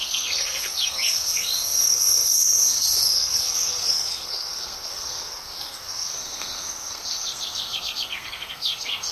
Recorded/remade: remade